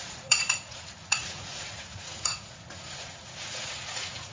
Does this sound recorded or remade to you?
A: remade